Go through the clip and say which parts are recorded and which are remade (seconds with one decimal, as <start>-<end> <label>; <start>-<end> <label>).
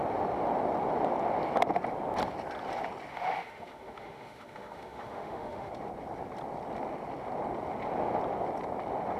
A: 0.0-3.1 recorded; 3.1-5.7 remade; 5.7-9.2 recorded